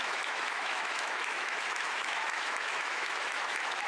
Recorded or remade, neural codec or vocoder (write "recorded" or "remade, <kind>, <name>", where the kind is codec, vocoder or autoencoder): remade, autoencoder, DAC-VAE